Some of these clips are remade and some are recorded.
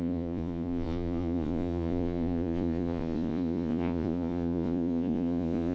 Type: remade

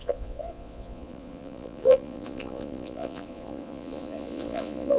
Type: remade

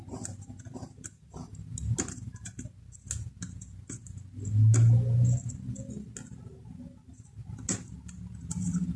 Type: recorded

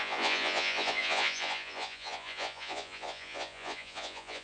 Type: remade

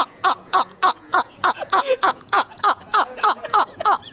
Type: remade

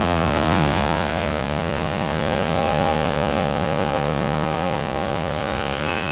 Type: remade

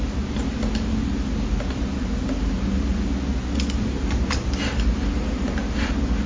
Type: recorded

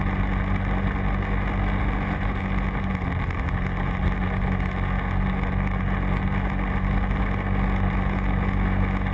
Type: recorded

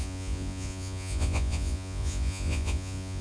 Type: remade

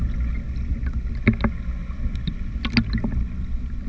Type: recorded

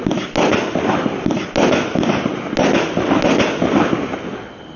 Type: recorded